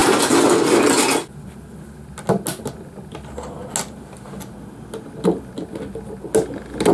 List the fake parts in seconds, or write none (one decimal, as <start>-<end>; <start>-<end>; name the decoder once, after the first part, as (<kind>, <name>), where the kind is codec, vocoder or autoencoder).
none

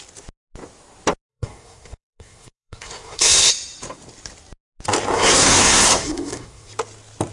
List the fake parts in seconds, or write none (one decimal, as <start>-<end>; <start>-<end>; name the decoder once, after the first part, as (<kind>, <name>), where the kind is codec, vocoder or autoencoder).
1.3-3.5 (codec, SNAC); 5.1-6.7

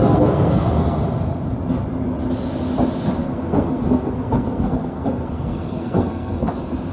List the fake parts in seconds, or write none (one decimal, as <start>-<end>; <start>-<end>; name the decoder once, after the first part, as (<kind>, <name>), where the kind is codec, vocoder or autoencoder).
0.0-1.0 (codec, SNAC); 3.2-6.5

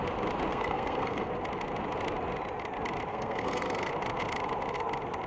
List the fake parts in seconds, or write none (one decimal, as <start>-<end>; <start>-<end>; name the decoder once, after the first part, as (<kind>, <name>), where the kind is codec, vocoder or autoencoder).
0.5-1.3 (codec, SNAC); 3.1-3.9

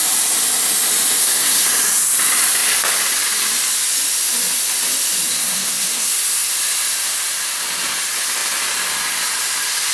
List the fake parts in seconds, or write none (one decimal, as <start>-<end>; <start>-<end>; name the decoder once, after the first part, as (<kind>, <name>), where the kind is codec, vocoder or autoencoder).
1.2-1.7 (codec, SNAC); 5.3-6.5

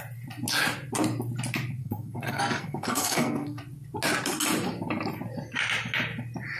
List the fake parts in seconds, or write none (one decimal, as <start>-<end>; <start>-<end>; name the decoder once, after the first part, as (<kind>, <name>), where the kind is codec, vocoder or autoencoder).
1.8-3.6 (codec, SNAC)

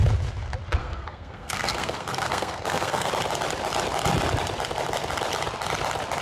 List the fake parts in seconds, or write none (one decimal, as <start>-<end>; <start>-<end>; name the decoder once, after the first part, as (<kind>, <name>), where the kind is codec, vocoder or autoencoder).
0.8-3.1 (codec, SNAC)